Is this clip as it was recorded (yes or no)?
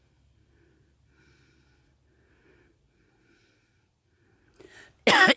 yes